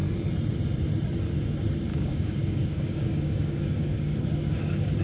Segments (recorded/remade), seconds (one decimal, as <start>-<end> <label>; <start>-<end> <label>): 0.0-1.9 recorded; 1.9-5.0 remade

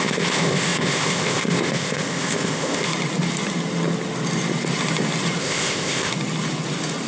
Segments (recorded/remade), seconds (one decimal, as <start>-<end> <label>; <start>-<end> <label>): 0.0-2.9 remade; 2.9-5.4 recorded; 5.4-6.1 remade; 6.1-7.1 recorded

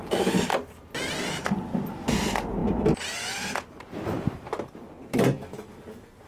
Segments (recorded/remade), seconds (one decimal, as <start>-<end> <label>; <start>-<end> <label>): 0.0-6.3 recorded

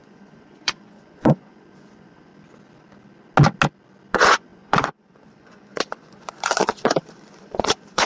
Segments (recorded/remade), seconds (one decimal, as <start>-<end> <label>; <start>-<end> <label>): 0.0-2.3 remade; 2.3-4.1 recorded; 4.1-8.1 remade

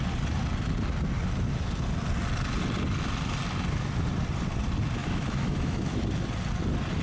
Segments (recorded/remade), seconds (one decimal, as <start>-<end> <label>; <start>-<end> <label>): 0.0-5.0 recorded; 5.0-6.0 remade; 6.0-7.0 recorded

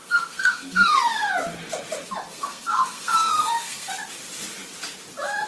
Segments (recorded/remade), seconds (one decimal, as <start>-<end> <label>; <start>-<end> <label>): 0.0-1.3 remade; 1.3-2.3 recorded; 2.3-3.9 remade; 3.9-5.5 recorded